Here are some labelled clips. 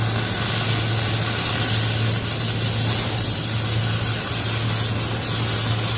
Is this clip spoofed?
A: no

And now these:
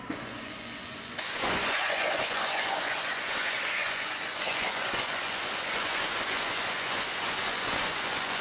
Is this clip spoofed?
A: yes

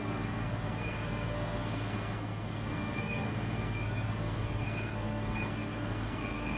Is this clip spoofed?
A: yes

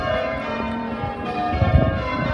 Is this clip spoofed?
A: yes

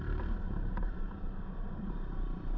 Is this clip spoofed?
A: yes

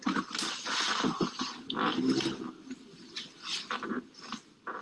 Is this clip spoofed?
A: no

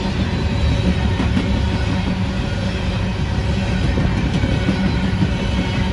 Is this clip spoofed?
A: no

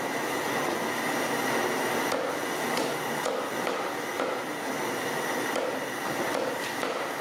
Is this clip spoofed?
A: no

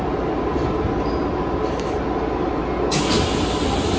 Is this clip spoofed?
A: no